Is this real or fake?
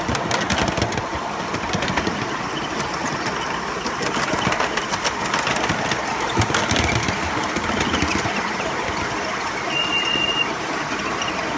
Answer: real